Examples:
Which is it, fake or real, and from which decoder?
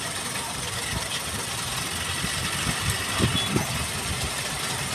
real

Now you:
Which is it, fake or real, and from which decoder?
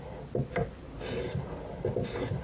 real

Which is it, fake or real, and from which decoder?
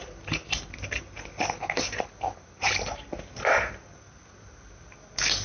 real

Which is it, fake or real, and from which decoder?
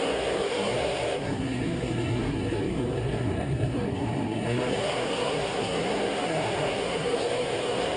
fake, codec, SNAC